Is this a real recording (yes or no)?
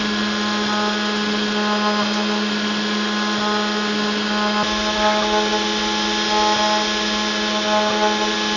yes